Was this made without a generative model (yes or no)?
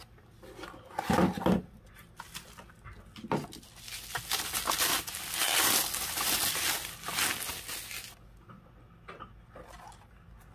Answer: yes